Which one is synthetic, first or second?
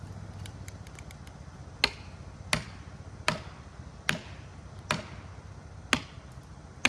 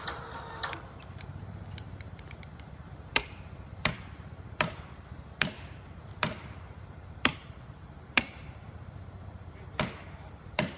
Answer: second